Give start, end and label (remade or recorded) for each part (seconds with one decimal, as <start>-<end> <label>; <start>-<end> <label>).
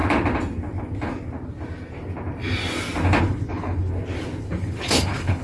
0.0-3.2 recorded; 3.2-3.9 remade; 3.9-4.4 recorded; 4.4-5.4 remade